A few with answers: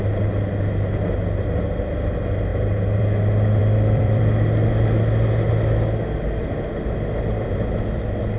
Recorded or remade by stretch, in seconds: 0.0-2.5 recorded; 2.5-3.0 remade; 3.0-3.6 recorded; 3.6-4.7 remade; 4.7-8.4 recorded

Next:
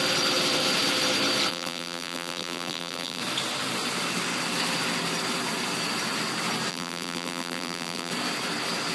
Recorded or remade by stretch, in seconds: 0.0-1.5 recorded; 1.5-3.2 remade; 3.2-6.7 recorded; 6.7-8.1 remade; 8.1-8.9 recorded

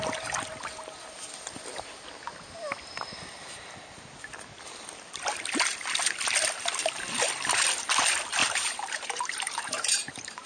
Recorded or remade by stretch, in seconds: 0.0-8.4 recorded; 8.4-10.5 remade

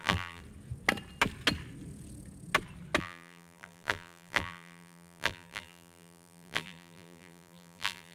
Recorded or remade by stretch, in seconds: 0.0-0.4 remade; 0.4-3.0 recorded; 3.0-8.1 remade

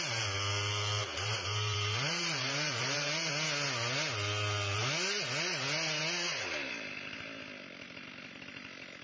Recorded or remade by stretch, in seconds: 0.0-1.0 recorded; 1.0-3.3 remade; 3.3-9.0 recorded

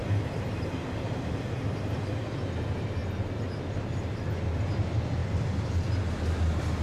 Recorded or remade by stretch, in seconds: 0.0-1.5 remade; 1.5-6.8 recorded

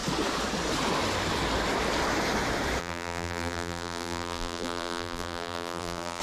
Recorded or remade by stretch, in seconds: 0.0-2.8 recorded; 2.8-6.2 remade